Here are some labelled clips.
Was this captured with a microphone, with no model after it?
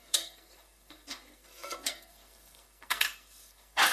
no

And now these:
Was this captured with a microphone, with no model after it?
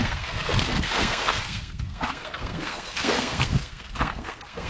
no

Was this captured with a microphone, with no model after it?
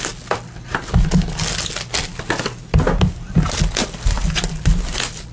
yes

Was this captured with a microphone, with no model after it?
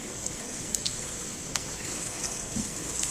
no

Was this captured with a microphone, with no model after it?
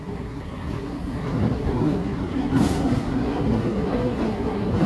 no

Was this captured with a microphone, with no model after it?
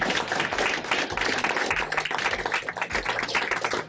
yes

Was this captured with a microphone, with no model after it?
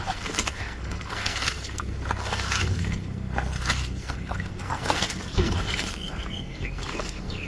no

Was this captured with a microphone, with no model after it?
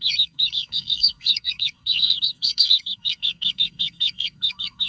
no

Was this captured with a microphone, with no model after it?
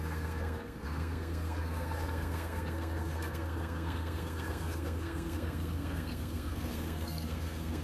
no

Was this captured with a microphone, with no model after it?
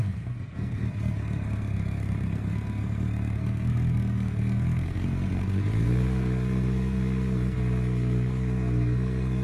no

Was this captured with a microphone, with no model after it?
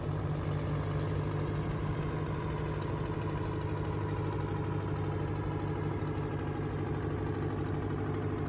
yes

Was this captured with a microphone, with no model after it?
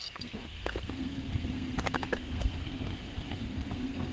no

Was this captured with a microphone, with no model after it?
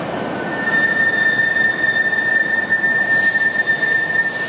yes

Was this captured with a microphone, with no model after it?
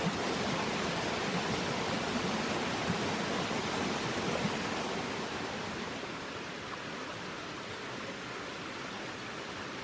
yes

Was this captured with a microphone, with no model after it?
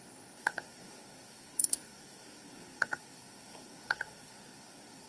no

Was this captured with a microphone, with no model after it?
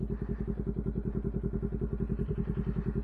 yes